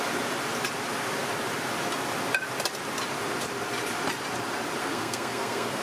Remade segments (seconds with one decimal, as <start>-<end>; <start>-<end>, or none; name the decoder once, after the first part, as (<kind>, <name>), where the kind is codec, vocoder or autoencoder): 4.8-5.8 (codec, SNAC)